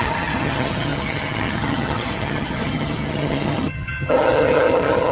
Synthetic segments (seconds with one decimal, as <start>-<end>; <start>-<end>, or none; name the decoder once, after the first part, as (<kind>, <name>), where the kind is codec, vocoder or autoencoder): 0.0-5.1 (vocoder, HiFi-GAN)